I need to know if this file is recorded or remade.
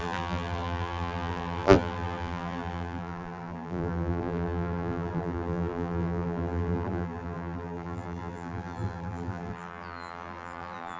remade